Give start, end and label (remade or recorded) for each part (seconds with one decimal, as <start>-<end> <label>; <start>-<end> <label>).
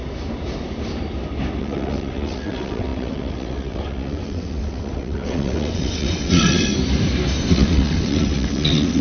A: 0.0-1.6 recorded; 1.6-6.7 remade; 6.7-7.5 recorded; 7.5-9.0 remade